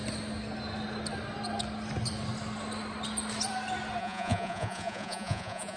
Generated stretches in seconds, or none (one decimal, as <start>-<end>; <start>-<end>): 4.0-5.8